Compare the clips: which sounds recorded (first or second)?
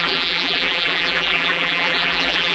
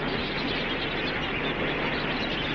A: second